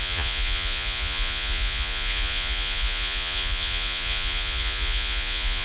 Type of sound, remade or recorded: remade